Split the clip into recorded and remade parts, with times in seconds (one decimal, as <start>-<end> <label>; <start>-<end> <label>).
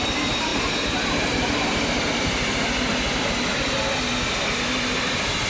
0.0-5.5 recorded